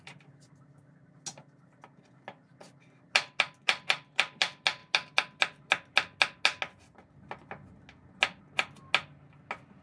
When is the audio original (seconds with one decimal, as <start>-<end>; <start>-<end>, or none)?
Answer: 0.0-9.8